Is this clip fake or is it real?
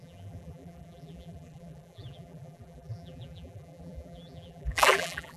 fake